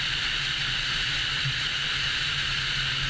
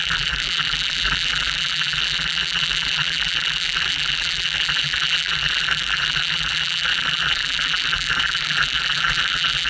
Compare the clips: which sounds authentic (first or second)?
first